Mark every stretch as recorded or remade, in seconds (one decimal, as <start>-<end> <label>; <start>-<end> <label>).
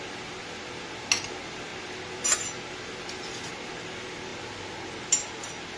0.0-5.8 recorded